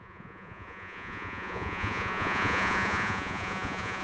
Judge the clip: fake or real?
fake